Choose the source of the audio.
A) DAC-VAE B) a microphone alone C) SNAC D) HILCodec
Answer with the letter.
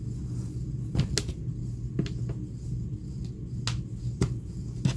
B